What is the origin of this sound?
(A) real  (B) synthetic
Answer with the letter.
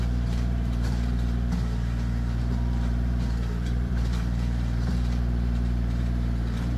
B